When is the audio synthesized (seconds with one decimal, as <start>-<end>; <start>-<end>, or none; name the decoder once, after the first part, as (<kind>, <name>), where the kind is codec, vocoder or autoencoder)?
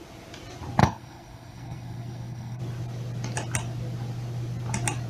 0.8-2.6 (codec, SNAC)